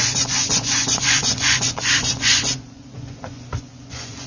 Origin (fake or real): fake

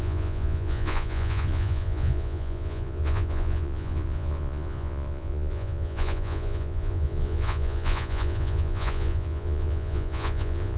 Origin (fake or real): fake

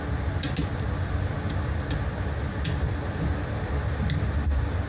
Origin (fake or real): real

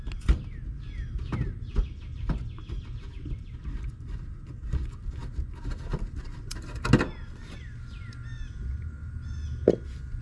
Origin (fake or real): real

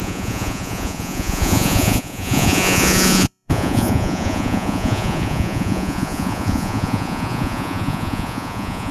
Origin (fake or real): fake